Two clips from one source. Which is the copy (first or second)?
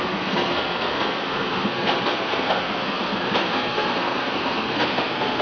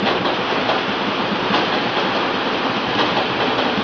first